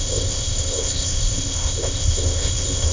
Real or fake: fake